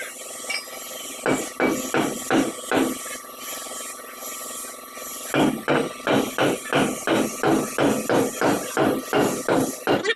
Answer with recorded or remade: recorded